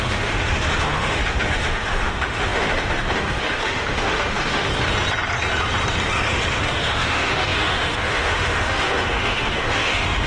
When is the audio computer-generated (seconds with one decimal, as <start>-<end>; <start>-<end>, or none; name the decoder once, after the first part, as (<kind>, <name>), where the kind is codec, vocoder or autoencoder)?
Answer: 0.0-4.7 (autoencoder, DAC-VAE); 6.5-10.3